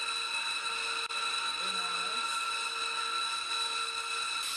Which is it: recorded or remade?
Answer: recorded